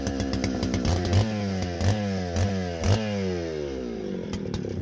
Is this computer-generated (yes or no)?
no